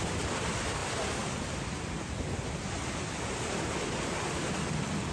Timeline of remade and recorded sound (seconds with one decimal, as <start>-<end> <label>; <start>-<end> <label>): 0.0-0.8 remade; 0.8-3.9 recorded; 3.9-5.1 remade